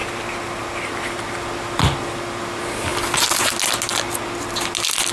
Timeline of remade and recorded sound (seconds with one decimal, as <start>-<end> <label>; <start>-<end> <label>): 0.0-5.1 recorded

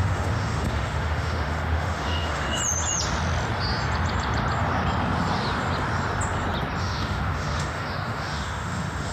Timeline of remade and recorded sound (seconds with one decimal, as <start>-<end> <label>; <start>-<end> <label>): 0.0-2.6 remade; 2.6-6.8 recorded; 6.8-9.1 remade